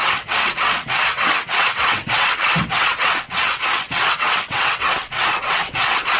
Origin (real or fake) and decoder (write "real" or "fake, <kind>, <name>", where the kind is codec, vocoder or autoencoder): fake, vocoder, WaveNeXt